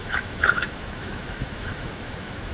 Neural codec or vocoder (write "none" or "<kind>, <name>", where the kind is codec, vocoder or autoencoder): autoencoder, DAC-VAE